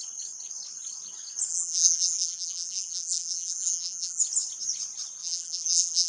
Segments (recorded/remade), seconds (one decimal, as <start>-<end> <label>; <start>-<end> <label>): 0.0-1.5 recorded; 1.5-4.2 remade; 4.2-5.2 recorded; 5.2-6.1 remade